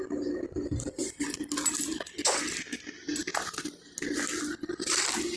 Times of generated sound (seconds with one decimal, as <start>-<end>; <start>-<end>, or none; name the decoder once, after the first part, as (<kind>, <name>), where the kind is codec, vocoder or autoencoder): none